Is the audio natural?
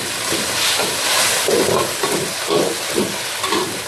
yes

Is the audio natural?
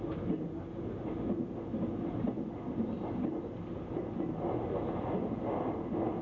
yes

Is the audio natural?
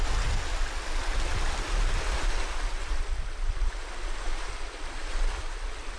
yes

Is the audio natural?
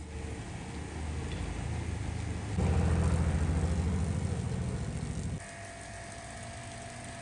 yes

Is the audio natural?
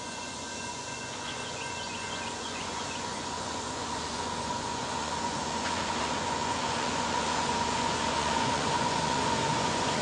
no